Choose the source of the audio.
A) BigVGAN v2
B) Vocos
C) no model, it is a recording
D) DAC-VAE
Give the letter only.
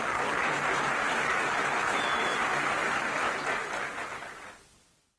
C